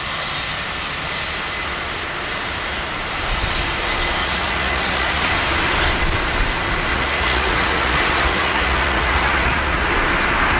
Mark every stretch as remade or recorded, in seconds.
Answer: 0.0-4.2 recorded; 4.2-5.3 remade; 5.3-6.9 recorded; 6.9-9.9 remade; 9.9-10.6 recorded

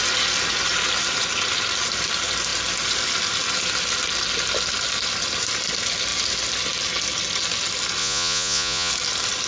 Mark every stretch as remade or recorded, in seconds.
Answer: 0.0-8.0 recorded; 8.0-8.9 remade; 8.9-9.5 recorded

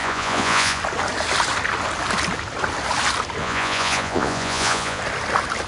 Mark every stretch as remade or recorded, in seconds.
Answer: 0.0-0.8 remade; 0.8-3.4 recorded; 3.4-5.0 remade; 5.0-5.7 recorded

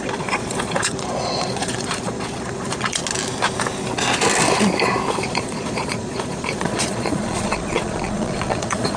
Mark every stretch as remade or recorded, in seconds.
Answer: 0.0-3.0 remade; 3.0-5.1 recorded; 5.1-9.0 remade

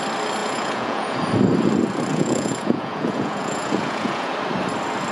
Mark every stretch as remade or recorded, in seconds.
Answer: 0.0-0.4 recorded; 0.4-1.2 remade; 1.2-2.1 recorded; 2.1-4.3 remade; 4.3-5.1 recorded

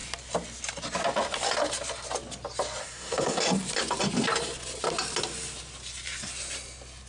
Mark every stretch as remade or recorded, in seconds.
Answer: 0.0-2.8 recorded; 2.8-3.4 remade; 3.4-7.1 recorded